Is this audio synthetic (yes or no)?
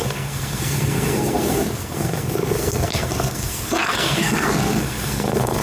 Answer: yes